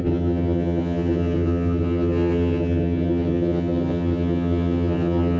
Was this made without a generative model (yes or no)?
no